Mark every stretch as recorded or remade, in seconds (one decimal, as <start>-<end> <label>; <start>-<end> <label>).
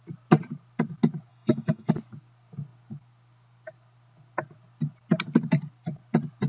0.0-1.3 recorded; 1.3-1.9 remade; 1.9-6.5 recorded